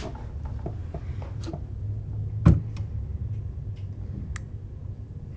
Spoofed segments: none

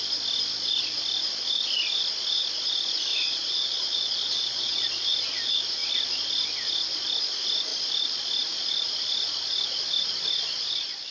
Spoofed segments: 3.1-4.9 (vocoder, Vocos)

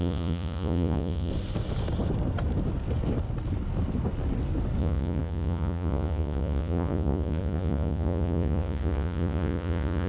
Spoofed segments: 0.0-1.3 (vocoder, Vocos); 4.8-10.1